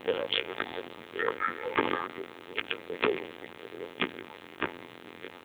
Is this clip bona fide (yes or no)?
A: no